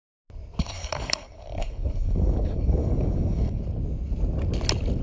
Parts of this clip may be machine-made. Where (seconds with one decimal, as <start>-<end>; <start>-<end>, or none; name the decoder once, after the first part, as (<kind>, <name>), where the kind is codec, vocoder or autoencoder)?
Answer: 0.6-3.6 (codec, DAC)